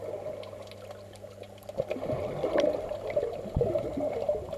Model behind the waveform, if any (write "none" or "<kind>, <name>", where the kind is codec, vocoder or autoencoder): none